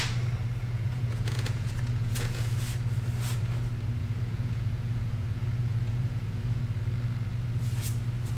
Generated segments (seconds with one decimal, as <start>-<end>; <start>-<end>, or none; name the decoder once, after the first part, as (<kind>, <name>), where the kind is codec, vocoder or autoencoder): 0.6-2.6 (vocoder, Vocos); 4.0-6.6